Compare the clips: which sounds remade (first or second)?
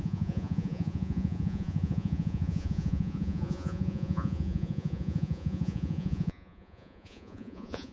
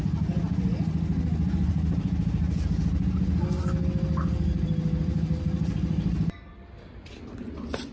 first